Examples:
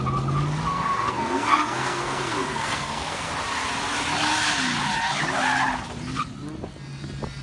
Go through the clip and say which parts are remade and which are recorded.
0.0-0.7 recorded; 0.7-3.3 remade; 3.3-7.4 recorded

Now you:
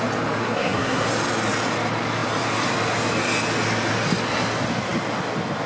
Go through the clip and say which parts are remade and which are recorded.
0.0-0.4 recorded; 0.4-1.1 remade; 1.1-5.7 recorded

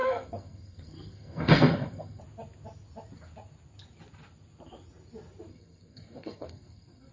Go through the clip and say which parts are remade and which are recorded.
0.0-2.2 remade; 2.2-5.5 recorded; 5.5-7.1 remade

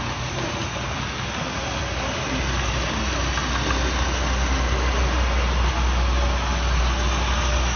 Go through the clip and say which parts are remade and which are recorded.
0.0-7.8 recorded

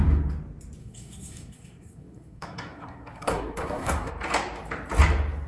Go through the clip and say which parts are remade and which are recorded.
0.0-0.8 recorded; 0.8-4.1 remade; 4.1-5.5 recorded

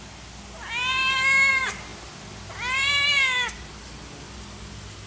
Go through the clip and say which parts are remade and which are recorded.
0.0-5.1 recorded

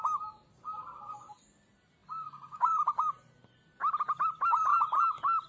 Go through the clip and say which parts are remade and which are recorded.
0.0-5.5 recorded

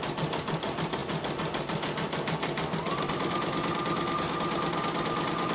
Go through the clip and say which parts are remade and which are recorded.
0.0-5.5 recorded